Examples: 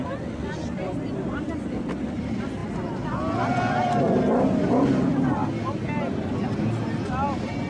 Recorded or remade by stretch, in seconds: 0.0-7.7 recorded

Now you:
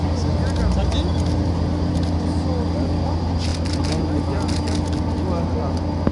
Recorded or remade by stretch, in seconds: 0.0-6.1 recorded

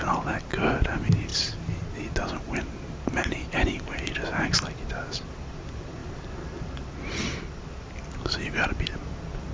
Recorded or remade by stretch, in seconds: 0.0-9.5 recorded

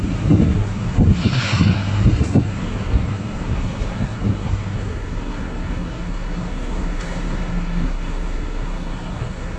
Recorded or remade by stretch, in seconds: 0.0-9.6 remade

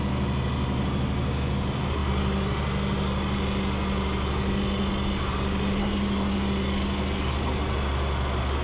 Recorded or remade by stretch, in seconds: 0.0-8.6 recorded

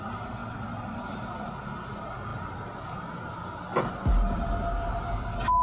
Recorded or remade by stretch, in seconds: 0.0-5.6 recorded

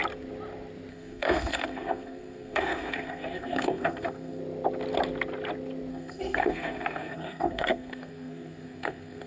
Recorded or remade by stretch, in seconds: 0.0-0.9 recorded; 0.9-4.4 remade; 4.4-5.9 recorded; 5.9-9.3 remade